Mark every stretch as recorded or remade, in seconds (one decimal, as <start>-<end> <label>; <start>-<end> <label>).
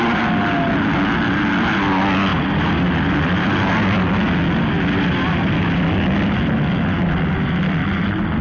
0.0-2.3 recorded; 2.3-3.7 remade; 3.7-8.4 recorded